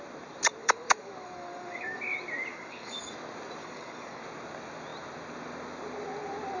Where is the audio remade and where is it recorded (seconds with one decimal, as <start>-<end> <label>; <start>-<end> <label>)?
0.0-0.6 recorded; 0.6-2.0 remade; 2.0-2.5 recorded; 2.5-3.1 remade; 3.1-3.6 recorded; 3.6-4.2 remade; 4.2-6.6 recorded